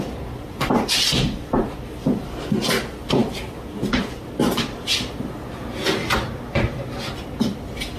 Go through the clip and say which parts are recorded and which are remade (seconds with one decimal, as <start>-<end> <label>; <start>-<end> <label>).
0.0-8.0 recorded

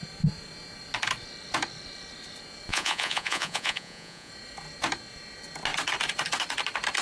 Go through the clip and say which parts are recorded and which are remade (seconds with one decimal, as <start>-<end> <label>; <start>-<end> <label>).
0.0-2.7 recorded; 2.7-4.3 remade; 4.3-7.0 recorded

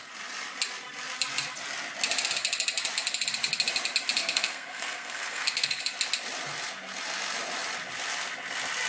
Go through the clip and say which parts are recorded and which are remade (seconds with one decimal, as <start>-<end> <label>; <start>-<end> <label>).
0.0-4.2 recorded; 4.2-5.8 remade; 5.8-8.9 recorded

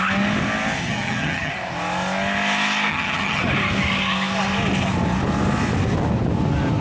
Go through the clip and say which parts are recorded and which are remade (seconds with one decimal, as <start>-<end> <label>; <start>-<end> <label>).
0.0-0.8 recorded; 0.8-1.5 remade; 1.5-2.9 recorded; 2.9-3.4 remade; 3.4-6.8 recorded

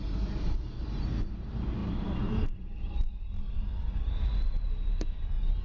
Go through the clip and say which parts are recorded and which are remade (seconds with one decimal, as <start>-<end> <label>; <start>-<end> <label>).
0.0-5.6 remade

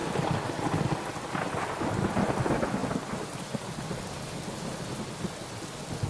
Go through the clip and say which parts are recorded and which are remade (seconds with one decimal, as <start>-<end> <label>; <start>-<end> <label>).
0.0-6.1 recorded

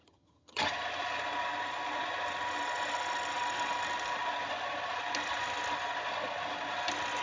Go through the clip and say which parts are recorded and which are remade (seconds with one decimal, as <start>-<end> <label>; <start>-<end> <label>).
0.0-0.6 remade; 0.6-7.2 recorded

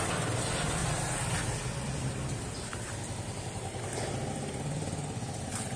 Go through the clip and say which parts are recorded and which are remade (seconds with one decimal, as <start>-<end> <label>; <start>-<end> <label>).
0.0-0.8 remade; 0.8-4.3 recorded; 4.3-5.8 remade